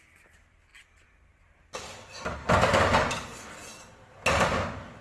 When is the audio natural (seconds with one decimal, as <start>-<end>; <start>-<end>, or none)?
0.0-5.0